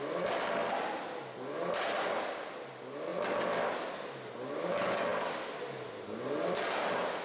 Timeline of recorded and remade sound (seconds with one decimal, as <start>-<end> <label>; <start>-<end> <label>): 0.0-7.2 recorded